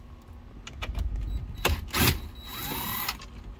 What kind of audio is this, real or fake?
real